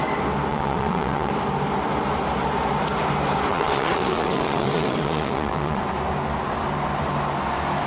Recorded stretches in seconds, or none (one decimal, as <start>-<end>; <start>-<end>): 0.0-0.5; 1.3-3.5; 5.8-7.9